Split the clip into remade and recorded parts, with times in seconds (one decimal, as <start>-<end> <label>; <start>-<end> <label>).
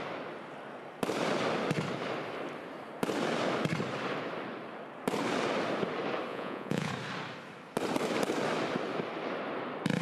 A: 0.0-6.3 recorded; 6.3-6.9 remade; 6.9-10.0 recorded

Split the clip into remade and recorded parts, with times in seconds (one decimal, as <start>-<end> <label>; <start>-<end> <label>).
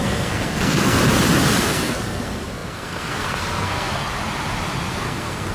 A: 0.0-1.0 remade; 1.0-1.6 recorded; 1.6-4.1 remade; 4.1-4.9 recorded; 4.9-5.5 remade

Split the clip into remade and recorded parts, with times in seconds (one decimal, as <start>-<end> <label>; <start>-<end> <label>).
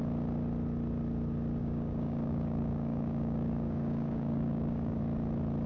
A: 0.0-1.6 recorded; 1.6-5.0 remade; 5.0-5.7 recorded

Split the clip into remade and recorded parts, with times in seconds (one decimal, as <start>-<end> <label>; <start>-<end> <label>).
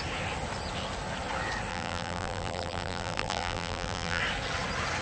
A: 0.0-1.7 recorded; 1.7-4.2 remade; 4.2-5.0 recorded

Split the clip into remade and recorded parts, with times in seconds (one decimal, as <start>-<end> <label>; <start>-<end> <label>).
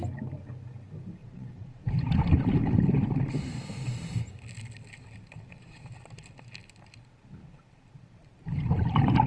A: 0.0-1.2 recorded; 1.2-1.8 remade; 1.8-9.3 recorded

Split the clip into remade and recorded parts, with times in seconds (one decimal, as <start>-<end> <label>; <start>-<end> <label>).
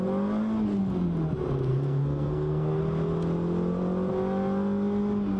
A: 0.0-1.7 recorded; 1.7-2.8 remade; 2.8-5.4 recorded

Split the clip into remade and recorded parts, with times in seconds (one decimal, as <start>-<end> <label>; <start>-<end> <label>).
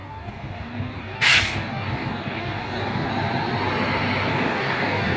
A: 0.0-3.1 remade; 3.1-4.3 recorded; 4.3-5.2 remade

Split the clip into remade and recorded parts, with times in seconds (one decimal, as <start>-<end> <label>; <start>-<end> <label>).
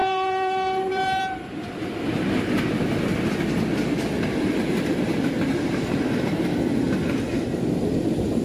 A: 0.0-1.2 remade; 1.2-4.3 recorded; 4.3-5.1 remade; 5.1-8.4 recorded